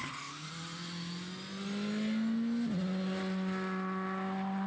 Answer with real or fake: real